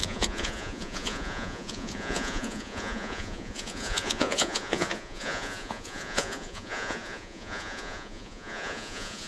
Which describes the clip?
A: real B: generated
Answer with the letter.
B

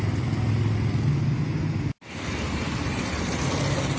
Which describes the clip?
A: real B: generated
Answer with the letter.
A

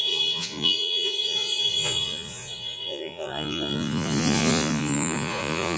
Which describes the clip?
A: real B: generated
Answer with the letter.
B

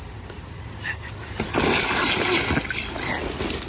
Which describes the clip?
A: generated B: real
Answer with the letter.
B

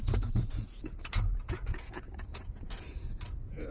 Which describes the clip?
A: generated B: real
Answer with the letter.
A